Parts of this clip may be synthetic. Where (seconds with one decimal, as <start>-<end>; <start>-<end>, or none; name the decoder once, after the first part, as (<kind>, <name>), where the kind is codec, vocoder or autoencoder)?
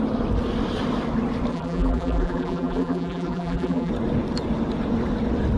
1.5-3.9 (vocoder, BigVGAN v2)